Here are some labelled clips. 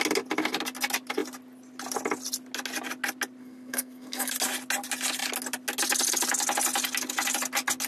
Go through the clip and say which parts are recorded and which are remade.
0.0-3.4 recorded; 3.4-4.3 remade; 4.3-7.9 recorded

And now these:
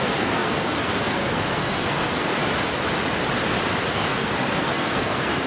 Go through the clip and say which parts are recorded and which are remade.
0.0-2.4 remade; 2.4-3.9 recorded; 3.9-5.5 remade

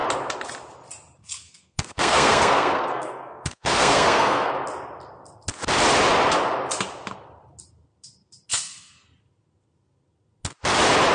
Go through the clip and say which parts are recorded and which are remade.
0.0-1.2 recorded; 1.2-4.5 remade; 4.5-8.5 recorded; 8.5-9.1 remade; 9.1-11.1 recorded

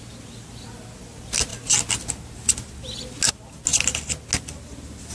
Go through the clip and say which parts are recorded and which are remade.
0.0-5.1 recorded

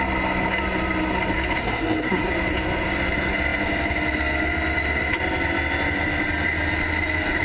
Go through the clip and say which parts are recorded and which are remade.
0.0-1.6 recorded; 1.6-2.3 remade; 2.3-7.4 recorded

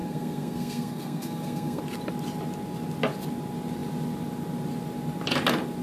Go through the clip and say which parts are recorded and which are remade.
0.0-1.8 remade; 1.8-5.8 recorded